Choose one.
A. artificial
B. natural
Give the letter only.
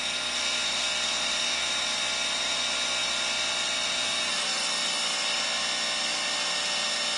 B